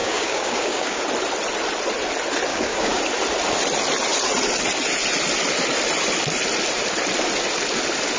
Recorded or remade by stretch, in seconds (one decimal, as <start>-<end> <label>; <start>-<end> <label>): 0.0-1.0 remade; 1.0-2.5 recorded; 2.5-3.0 remade; 3.0-8.2 recorded